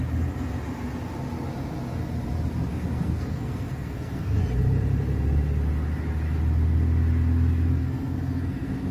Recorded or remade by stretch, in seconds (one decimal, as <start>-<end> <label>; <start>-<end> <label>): 0.0-2.7 recorded; 2.7-4.4 remade; 4.4-7.8 recorded; 7.8-8.9 remade